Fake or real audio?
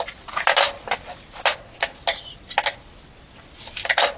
real